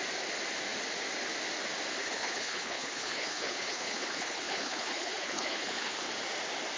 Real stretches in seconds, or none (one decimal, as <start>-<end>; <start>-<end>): 0.0-2.0; 6.1-6.8